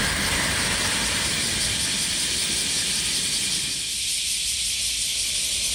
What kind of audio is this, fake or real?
real